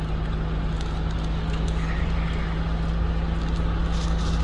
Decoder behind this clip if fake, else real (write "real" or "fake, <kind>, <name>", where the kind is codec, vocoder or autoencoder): real